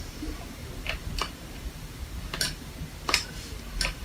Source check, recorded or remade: remade